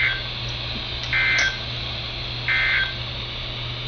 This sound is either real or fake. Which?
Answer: real